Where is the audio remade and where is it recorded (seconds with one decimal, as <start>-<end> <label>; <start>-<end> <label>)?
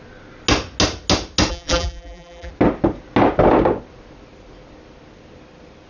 0.0-1.5 recorded; 1.5-2.5 remade; 2.5-5.9 recorded